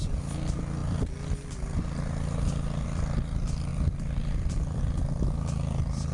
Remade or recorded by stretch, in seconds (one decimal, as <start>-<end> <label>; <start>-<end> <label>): 0.0-3.7 recorded; 3.7-4.8 remade; 4.8-6.1 recorded